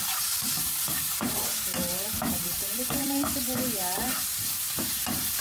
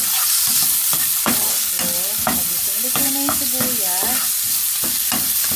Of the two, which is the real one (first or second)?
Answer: second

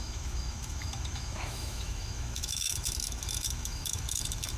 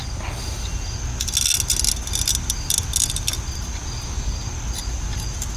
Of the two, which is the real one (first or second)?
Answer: second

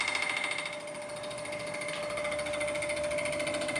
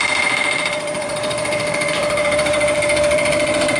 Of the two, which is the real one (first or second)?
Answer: first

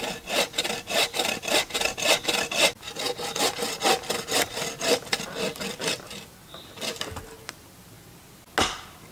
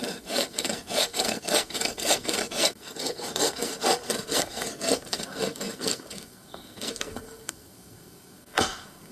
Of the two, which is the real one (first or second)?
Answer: first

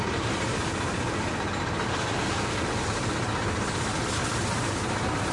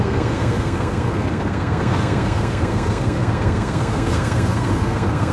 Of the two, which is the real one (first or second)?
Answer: first